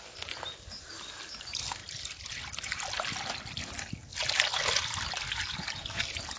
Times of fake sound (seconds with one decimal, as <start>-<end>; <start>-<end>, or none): none